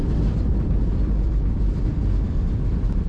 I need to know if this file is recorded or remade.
remade